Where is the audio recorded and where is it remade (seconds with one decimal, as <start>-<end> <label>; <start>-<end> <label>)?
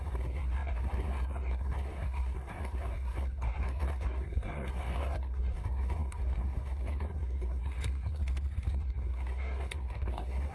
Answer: 0.0-8.2 remade; 8.2-8.7 recorded; 8.7-10.5 remade